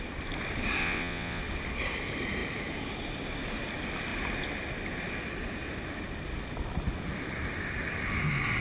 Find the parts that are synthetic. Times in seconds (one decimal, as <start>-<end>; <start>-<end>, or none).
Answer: 0.8-1.4